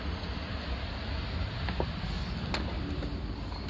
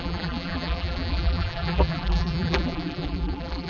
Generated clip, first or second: second